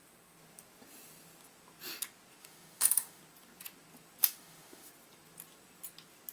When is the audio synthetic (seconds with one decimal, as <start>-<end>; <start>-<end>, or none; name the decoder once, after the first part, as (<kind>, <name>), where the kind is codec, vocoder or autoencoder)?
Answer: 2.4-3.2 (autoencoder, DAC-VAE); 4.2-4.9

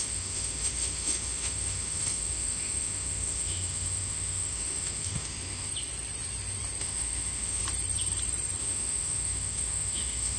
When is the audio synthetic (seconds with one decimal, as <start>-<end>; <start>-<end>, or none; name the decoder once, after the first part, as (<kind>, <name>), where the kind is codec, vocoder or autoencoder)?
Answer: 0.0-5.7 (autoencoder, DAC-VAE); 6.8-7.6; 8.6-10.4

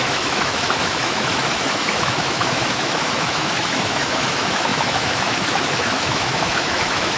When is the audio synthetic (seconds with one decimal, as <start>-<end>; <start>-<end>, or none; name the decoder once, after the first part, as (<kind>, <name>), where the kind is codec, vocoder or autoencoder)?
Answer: 0.0-7.2 (autoencoder, DAC-VAE)